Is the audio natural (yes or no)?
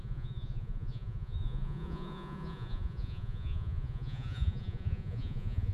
no